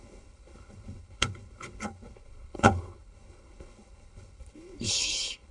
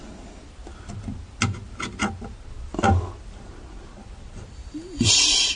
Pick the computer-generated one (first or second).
first